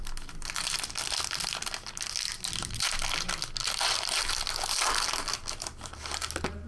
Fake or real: real